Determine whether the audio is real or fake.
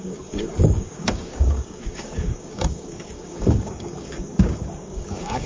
fake